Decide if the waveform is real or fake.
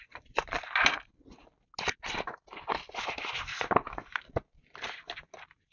real